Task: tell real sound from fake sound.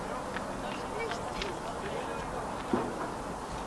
real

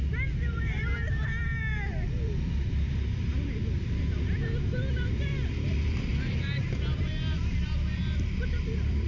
fake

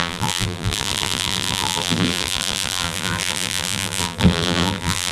fake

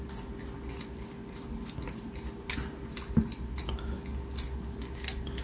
real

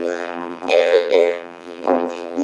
fake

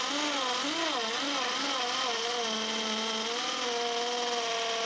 real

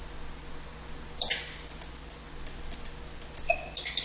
real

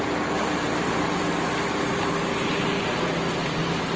real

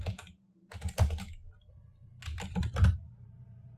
fake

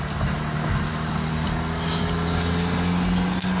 real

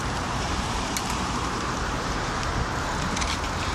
fake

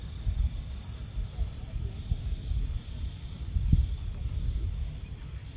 real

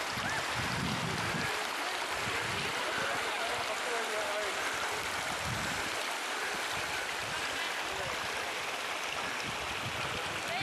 real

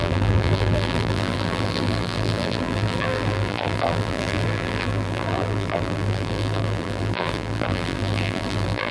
fake